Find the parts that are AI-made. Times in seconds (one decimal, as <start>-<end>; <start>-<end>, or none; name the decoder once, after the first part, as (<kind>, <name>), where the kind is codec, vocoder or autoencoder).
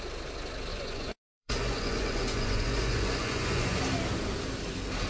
0.7-3.8 (vocoder, Vocos)